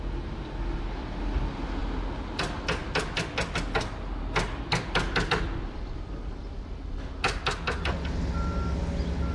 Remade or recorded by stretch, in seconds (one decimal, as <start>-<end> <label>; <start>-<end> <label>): 0.0-9.3 recorded